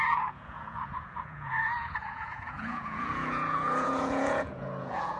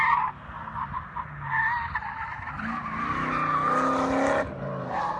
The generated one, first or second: first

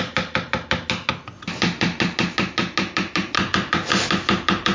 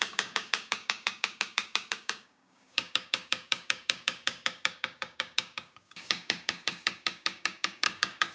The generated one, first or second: second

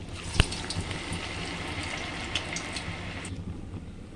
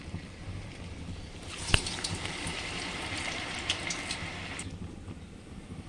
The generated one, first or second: second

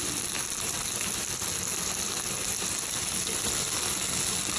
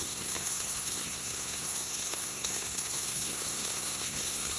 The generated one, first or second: second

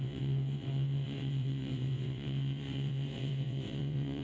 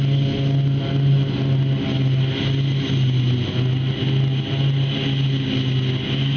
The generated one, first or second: first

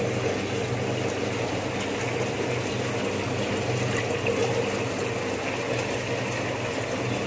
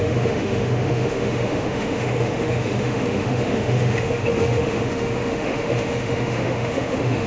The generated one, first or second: second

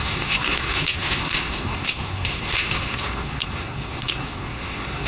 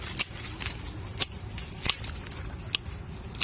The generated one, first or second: first